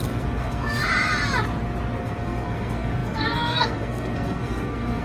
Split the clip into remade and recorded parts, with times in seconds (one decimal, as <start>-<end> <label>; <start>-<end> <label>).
0.0-0.8 remade; 0.8-2.0 recorded; 2.0-5.0 remade